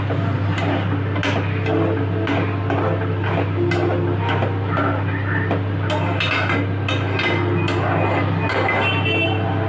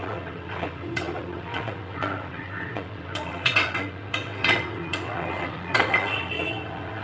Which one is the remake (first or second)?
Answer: second